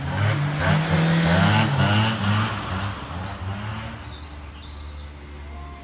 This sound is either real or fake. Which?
real